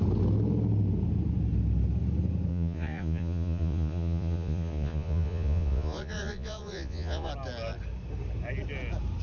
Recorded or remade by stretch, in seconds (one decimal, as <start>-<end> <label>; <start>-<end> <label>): 0.0-2.5 recorded; 2.5-7.3 remade; 7.3-9.2 recorded